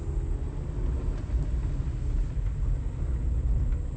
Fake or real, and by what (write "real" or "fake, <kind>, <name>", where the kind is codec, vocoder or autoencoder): real